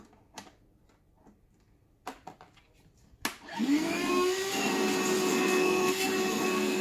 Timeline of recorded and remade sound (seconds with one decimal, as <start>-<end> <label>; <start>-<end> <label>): 0.0-3.5 recorded; 3.5-4.7 remade; 4.7-5.3 recorded; 5.3-6.8 remade